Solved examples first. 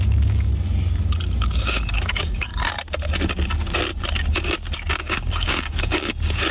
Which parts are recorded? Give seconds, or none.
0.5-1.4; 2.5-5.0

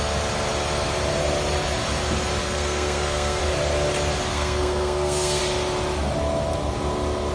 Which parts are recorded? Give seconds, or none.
0.0-2.4; 3.4-4.3; 5.4-7.3

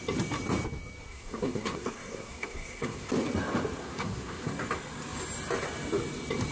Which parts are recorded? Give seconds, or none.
0.0-1.1; 3.1-3.8; 4.5-6.5